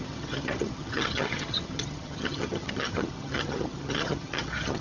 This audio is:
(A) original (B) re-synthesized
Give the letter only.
B